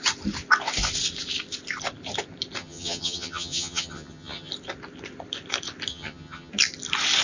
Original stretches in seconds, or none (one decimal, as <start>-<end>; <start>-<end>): 0.0-2.6; 4.5-5.9; 6.5-7.2